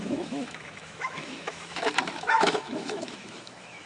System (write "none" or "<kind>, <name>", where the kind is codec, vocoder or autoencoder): autoencoder, DAC-VAE